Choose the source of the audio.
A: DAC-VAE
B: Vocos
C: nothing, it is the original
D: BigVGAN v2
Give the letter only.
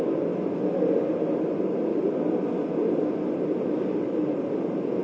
C